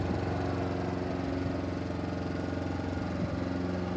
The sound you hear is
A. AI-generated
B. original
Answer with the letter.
B